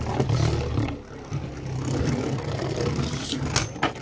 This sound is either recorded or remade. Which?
recorded